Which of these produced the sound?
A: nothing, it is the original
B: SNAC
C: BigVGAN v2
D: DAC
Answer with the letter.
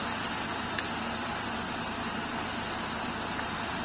A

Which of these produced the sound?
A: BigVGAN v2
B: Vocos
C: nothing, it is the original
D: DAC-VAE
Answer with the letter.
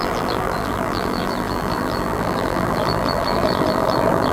A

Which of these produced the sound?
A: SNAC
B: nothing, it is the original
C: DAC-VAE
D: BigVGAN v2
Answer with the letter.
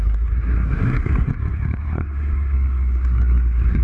A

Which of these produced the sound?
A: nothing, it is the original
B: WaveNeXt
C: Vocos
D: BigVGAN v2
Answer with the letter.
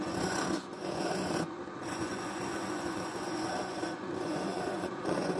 C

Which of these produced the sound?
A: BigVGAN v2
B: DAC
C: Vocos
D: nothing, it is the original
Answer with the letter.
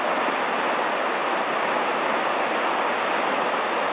D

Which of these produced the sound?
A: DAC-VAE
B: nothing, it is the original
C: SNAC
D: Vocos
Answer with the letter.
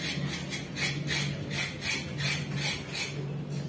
B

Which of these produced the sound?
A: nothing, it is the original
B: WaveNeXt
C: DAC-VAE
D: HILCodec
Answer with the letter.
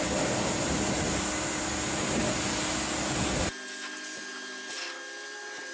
A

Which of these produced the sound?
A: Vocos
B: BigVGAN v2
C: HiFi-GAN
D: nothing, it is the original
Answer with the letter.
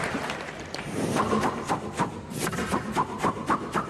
B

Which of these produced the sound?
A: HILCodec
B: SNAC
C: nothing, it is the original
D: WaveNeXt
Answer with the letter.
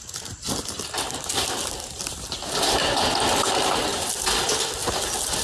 C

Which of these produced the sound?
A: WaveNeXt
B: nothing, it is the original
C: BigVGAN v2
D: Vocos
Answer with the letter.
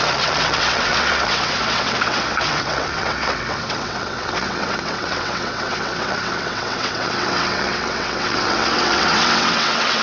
A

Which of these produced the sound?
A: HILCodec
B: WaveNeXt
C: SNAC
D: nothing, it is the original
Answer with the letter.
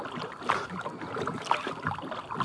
D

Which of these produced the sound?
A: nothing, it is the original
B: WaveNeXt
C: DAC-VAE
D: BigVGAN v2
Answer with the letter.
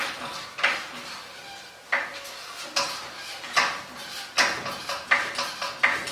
A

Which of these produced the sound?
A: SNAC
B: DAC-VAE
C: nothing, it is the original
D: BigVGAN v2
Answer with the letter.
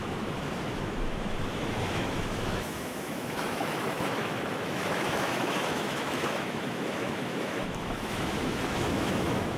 B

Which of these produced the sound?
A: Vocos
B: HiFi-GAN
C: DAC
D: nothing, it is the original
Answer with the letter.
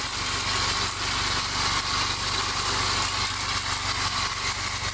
D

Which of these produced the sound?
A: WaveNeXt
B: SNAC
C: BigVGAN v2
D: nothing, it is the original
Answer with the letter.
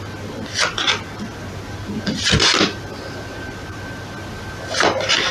D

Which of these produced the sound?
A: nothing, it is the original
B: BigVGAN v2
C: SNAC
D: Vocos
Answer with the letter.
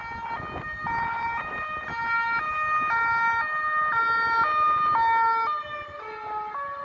A